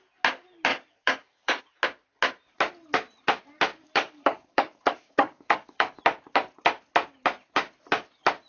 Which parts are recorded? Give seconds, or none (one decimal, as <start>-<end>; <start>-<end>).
0.0-0.7; 1.6-3.8; 6.0-8.5